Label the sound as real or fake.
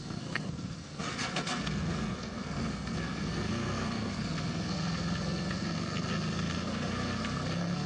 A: fake